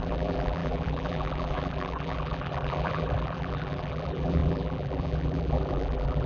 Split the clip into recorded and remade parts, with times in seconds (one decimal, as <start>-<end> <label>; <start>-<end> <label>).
0.0-6.3 remade